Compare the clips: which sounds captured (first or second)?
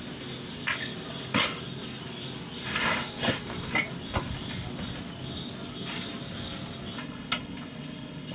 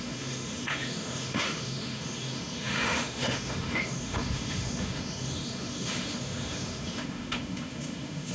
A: first